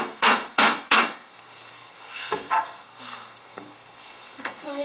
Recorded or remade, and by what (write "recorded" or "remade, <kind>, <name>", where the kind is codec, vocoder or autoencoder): remade, codec, SNAC